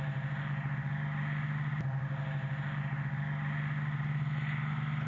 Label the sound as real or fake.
real